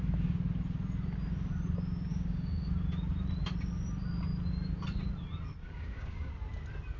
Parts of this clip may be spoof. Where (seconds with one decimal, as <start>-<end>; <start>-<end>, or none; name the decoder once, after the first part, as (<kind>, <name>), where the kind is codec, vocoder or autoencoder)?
2.1-2.7 (codec, DAC); 5.6-6.3